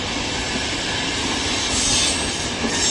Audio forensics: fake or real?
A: real